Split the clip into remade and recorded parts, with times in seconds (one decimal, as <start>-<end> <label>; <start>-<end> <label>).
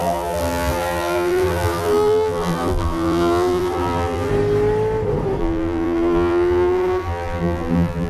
0.0-4.3 remade; 4.3-5.4 recorded; 5.4-8.1 remade